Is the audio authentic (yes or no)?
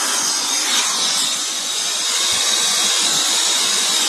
no